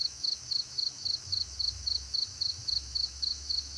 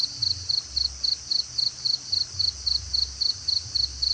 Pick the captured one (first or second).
second